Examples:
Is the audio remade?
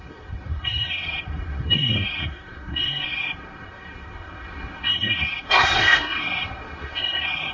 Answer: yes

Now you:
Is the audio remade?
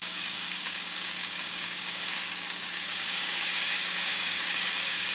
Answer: yes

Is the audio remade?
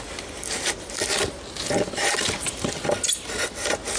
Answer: no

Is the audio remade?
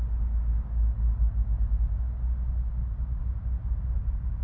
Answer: no